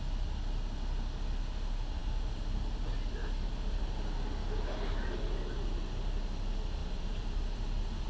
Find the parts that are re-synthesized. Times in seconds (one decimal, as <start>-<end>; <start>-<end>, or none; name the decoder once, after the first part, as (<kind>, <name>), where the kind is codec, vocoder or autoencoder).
6.8-8.1 (vocoder, BigVGAN v2)